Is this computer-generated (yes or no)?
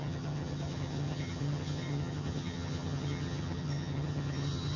yes